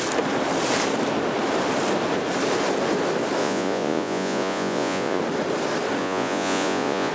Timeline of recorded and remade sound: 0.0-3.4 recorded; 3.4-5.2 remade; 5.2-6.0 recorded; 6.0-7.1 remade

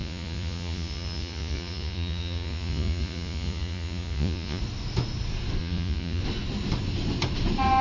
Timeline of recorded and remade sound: 0.0-4.6 remade; 4.6-5.6 recorded; 5.6-6.2 remade; 6.2-7.8 recorded

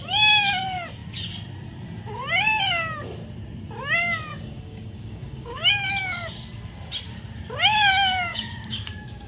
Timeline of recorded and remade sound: 0.0-4.3 recorded; 4.3-5.7 remade; 5.7-8.3 recorded; 8.3-9.3 remade

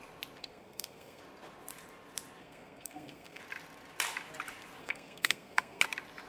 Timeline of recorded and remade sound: 0.0-0.4 recorded; 0.4-1.2 remade; 1.2-2.4 recorded; 2.4-3.4 remade; 3.4-4.8 recorded; 4.8-5.8 remade; 5.8-6.3 recorded

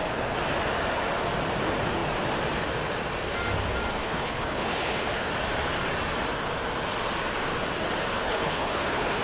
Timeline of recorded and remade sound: 0.0-4.0 recorded; 4.0-5.3 remade; 5.3-8.1 recorded; 8.1-9.2 remade

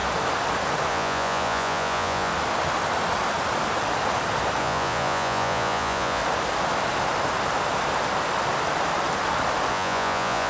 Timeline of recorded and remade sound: 0.0-0.9 recorded; 0.9-2.3 remade; 2.3-4.6 recorded; 4.6-6.2 remade; 6.2-9.7 recorded; 9.7-10.5 remade